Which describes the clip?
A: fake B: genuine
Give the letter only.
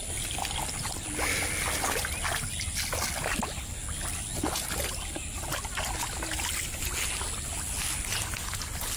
B